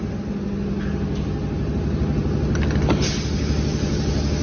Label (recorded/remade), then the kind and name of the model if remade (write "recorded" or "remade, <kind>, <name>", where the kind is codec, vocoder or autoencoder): recorded